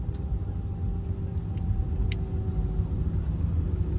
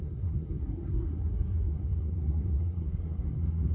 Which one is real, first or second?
first